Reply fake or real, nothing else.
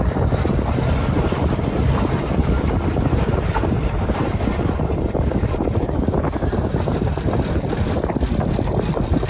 fake